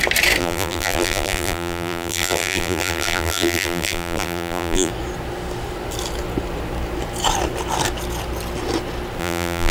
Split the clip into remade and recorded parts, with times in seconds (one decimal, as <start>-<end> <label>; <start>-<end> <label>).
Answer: 0.0-0.4 recorded; 0.4-4.9 remade; 4.9-9.2 recorded; 9.2-9.7 remade

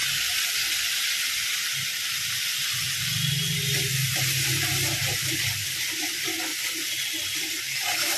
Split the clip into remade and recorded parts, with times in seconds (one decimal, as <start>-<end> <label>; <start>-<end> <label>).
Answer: 0.0-6.5 recorded; 6.5-7.6 remade; 7.6-8.2 recorded

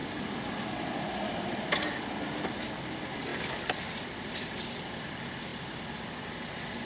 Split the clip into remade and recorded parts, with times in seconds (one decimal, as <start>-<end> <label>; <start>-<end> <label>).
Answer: 0.0-0.6 remade; 0.6-3.3 recorded; 3.3-4.9 remade; 4.9-5.5 recorded; 5.5-6.3 remade; 6.3-6.9 recorded

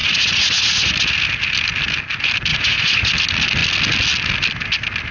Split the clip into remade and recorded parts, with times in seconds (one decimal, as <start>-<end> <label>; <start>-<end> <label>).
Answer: 0.0-0.9 remade; 0.9-2.5 recorded; 2.5-3.1 remade; 3.1-5.1 recorded

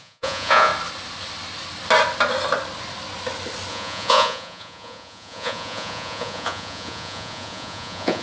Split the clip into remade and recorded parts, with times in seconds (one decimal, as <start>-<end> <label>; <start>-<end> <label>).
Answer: 0.0-0.7 remade; 0.7-3.7 recorded; 3.7-8.2 remade

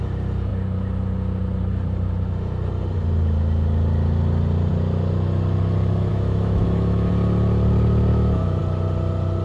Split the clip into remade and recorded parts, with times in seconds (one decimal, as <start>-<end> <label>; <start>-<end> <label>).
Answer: 0.0-6.1 recorded; 6.1-7.1 remade; 7.1-8.1 recorded; 8.1-8.6 remade; 8.6-9.4 recorded

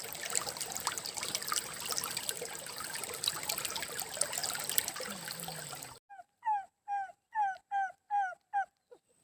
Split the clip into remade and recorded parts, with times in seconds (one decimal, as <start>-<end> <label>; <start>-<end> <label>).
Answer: 0.0-9.2 recorded

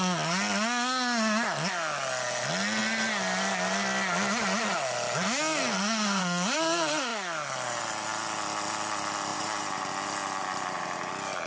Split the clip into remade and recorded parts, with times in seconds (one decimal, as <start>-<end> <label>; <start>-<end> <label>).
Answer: 0.0-9.3 recorded; 9.3-9.9 remade; 9.9-10.4 recorded; 10.4-11.1 remade; 11.1-11.5 recorded